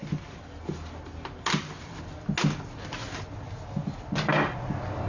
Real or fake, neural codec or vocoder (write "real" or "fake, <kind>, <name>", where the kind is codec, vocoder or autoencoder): real